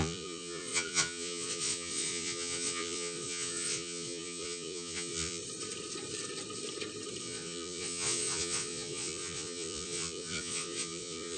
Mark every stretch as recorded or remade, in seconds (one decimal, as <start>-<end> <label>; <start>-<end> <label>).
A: 0.0-5.4 remade; 5.4-7.2 recorded; 7.2-11.4 remade